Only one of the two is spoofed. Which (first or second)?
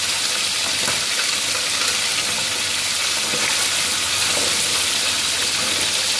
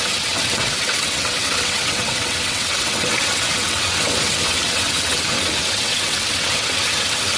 second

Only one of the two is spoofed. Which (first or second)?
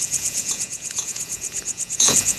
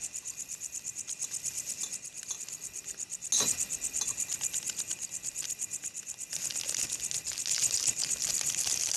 first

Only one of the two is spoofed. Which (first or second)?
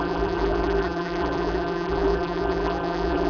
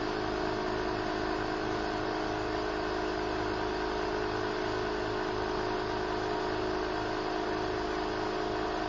first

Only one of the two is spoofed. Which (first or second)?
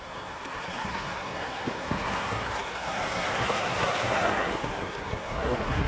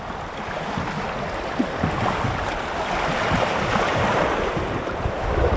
first